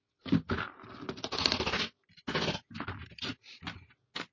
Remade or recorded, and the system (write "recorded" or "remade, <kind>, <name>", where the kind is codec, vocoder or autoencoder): recorded